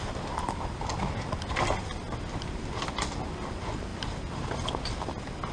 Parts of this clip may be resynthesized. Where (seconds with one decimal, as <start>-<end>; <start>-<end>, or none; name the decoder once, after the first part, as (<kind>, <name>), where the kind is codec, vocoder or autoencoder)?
0.0-0.9 (vocoder, BigVGAN v2)